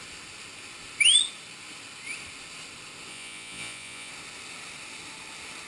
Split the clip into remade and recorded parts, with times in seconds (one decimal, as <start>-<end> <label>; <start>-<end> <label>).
0.0-3.1 recorded; 3.1-4.1 remade; 4.1-5.7 recorded